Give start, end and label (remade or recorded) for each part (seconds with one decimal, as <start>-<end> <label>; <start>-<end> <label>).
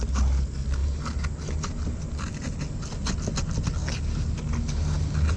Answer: 0.0-5.4 recorded